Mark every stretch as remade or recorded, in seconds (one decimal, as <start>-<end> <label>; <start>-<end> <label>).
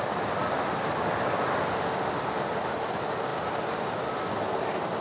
0.0-5.0 recorded